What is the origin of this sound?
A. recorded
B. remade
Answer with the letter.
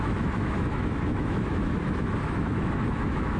B